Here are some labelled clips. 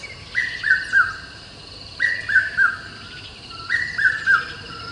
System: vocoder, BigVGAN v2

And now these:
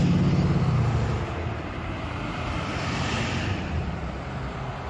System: none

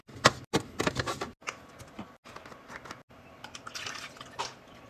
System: none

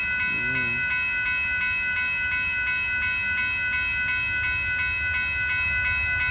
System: none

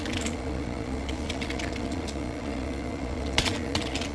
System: vocoder, Vocos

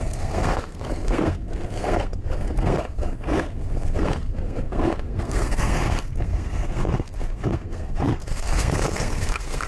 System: codec, SNAC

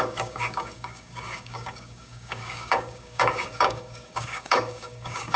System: codec, DAC